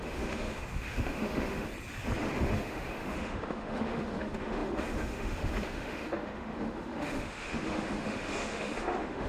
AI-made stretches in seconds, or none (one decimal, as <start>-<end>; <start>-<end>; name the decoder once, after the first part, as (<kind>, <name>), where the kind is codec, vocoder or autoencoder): 0.0-1.7 (autoencoder, DAC-VAE); 2.2-9.3